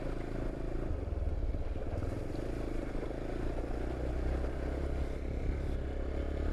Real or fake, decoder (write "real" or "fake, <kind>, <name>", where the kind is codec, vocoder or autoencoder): real